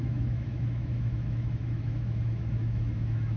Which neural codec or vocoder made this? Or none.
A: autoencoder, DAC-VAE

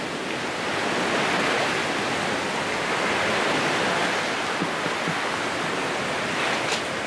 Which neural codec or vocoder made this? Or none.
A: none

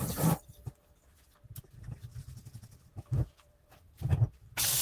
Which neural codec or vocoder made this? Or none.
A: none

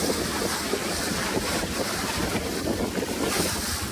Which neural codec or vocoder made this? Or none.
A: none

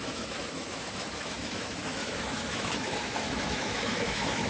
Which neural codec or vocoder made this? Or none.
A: autoencoder, DAC-VAE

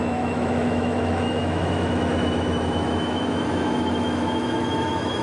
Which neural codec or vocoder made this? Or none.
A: autoencoder, DAC-VAE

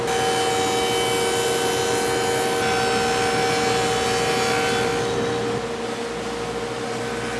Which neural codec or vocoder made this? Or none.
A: none